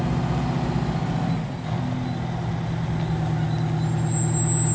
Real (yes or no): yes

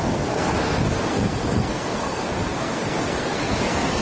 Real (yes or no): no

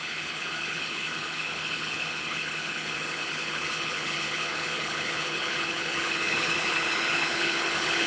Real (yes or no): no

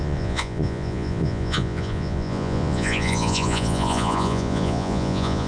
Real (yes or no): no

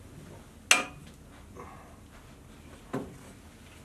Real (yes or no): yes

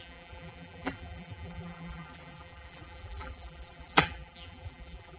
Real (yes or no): no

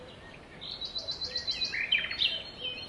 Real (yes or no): yes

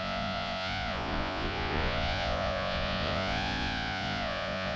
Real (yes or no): no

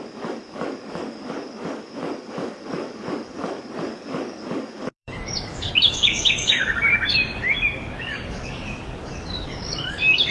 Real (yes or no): no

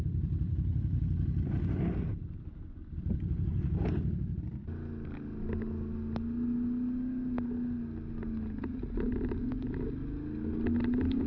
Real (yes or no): yes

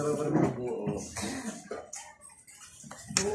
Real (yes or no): yes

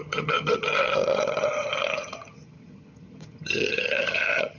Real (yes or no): no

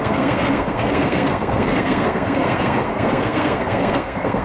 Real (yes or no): no